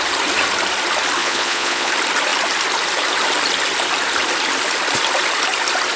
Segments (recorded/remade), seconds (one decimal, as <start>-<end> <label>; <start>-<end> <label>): 0.0-1.2 recorded; 1.2-1.9 remade; 1.9-6.0 recorded